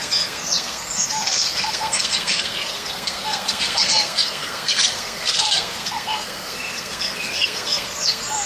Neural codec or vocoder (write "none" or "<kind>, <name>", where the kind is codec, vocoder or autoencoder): codec, SNAC